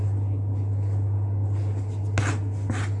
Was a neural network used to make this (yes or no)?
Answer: no